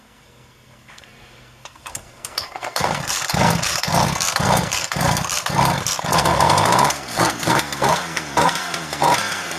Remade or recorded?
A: remade